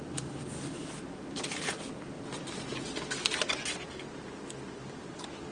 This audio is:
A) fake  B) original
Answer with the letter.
B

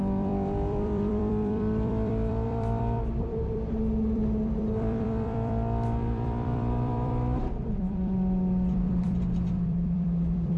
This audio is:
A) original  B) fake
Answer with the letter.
B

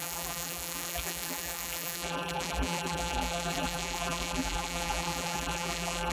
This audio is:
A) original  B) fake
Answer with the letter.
B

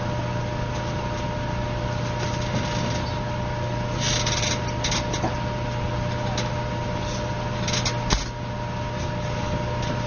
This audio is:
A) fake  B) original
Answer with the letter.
B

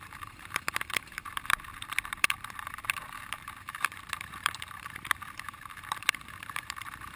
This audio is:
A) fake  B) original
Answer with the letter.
A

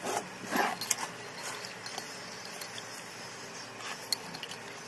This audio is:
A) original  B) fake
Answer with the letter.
A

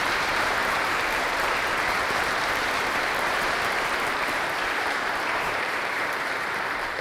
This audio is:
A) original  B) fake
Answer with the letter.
B